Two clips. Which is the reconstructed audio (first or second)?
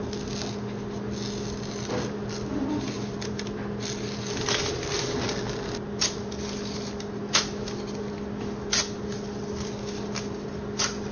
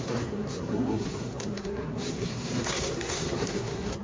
second